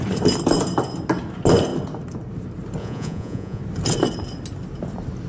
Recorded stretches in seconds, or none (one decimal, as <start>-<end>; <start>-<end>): 0.0-2.8; 3.6-5.3